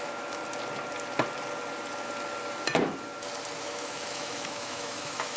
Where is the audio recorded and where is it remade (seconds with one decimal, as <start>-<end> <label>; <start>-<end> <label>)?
0.0-0.4 remade; 0.4-3.6 recorded; 3.6-5.4 remade